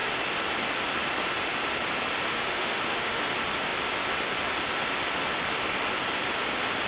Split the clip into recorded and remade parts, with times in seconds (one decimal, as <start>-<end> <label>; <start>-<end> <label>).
0.0-2.3 recorded; 2.3-3.2 remade; 3.2-6.9 recorded